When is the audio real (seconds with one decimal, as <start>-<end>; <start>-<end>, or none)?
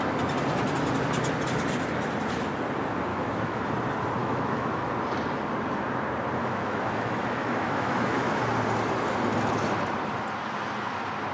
0.0-3.1; 3.6-4.2; 4.9-6.4; 8.4-11.3